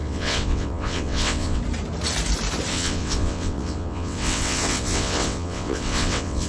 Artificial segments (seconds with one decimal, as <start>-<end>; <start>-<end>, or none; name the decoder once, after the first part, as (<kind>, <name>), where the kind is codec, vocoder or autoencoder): 0.0-1.6 (vocoder, WaveNeXt); 2.7-6.5